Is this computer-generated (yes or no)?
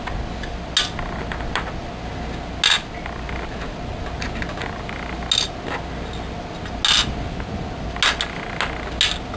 no